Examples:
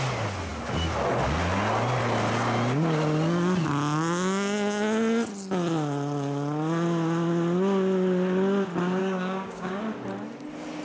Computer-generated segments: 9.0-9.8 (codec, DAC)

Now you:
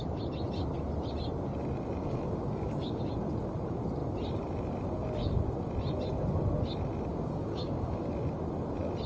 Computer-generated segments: 2.0-3.0 (codec, DAC); 7.1-8.1

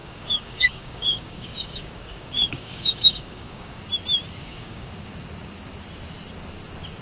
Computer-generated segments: 0.0-3.8 (codec, DAC); 4.4-4.9